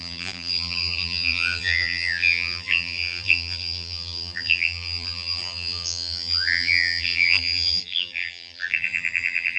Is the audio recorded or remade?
remade